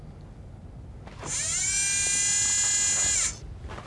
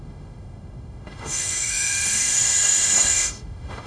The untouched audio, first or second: first